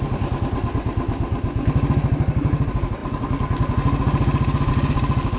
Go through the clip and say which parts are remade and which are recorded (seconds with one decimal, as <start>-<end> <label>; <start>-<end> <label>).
0.0-5.4 recorded